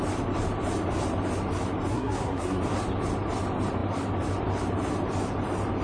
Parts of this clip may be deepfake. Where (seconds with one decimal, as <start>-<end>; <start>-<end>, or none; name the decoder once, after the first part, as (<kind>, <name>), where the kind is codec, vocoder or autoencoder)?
1.9-2.6 (codec, SNAC)